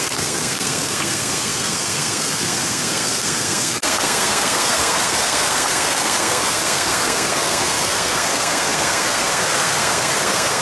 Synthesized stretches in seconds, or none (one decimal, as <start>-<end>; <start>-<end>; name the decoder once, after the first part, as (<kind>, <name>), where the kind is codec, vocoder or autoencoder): 0.0-10.6 (codec, SNAC)

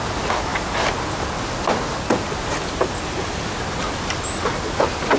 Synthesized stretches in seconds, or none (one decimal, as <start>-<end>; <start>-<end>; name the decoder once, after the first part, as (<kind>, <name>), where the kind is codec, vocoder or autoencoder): none

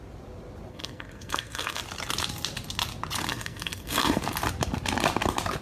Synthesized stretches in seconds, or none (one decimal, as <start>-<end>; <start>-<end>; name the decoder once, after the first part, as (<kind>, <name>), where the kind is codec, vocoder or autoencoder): 0.7-1.8 (codec, SNAC); 3.3-4.2